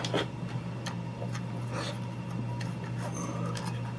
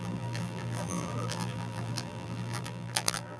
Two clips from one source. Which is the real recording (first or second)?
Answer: first